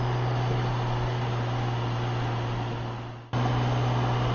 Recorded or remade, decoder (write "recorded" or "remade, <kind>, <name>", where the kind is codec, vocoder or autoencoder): recorded